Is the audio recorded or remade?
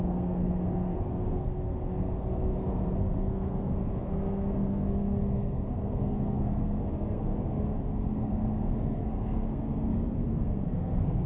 remade